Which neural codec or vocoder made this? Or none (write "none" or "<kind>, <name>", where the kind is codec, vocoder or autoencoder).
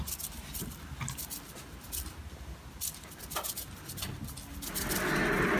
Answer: none